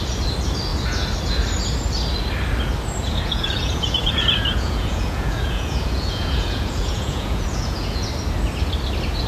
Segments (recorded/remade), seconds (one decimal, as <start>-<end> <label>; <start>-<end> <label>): 0.0-3.0 recorded; 3.0-8.1 remade; 8.1-9.3 recorded